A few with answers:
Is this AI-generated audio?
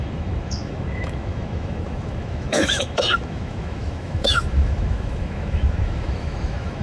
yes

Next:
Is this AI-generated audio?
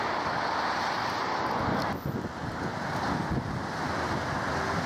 no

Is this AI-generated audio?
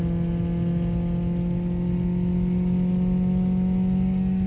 no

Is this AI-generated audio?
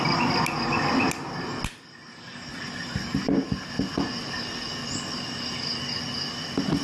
no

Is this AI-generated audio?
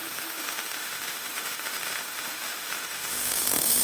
yes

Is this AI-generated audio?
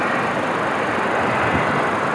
no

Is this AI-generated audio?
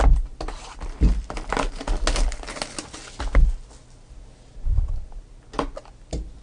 no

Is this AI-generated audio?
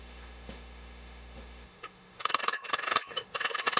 yes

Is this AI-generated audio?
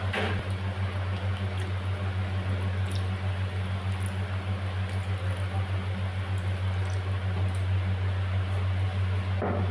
no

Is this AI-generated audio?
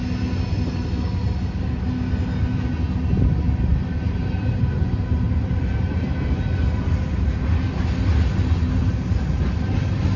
no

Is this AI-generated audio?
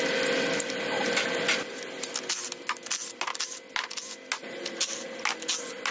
no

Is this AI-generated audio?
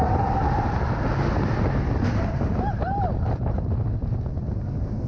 no